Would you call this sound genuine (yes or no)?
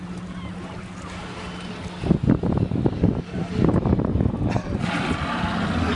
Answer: yes